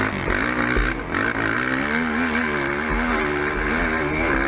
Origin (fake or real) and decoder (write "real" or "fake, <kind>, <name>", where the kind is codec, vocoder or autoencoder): real